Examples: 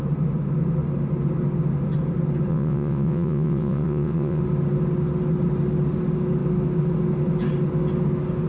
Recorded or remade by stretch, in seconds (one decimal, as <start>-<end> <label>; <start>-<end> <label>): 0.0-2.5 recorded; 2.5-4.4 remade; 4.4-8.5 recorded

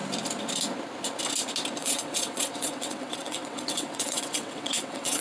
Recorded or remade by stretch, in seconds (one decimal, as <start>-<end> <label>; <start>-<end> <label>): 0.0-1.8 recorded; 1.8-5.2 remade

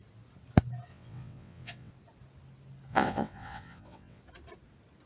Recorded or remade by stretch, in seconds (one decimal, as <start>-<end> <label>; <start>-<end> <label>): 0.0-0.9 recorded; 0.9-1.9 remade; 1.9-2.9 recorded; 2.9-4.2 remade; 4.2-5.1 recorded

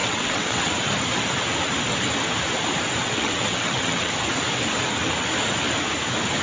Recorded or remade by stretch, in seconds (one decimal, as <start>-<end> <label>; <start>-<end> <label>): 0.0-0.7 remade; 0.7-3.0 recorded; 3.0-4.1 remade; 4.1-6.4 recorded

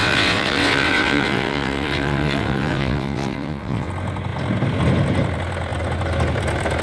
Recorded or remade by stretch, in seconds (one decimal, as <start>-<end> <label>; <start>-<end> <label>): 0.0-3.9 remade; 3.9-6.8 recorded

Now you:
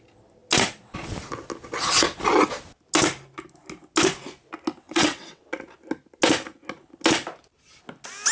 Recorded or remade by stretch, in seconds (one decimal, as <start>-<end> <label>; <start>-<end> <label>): 0.0-4.8 recorded; 4.8-5.4 remade; 5.4-8.3 recorded

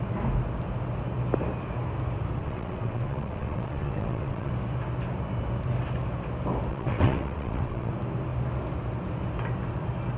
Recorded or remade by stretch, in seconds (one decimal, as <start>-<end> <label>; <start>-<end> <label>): 0.0-2.4 recorded; 2.4-4.5 remade; 4.5-6.7 recorded; 6.7-7.9 remade; 7.9-10.2 recorded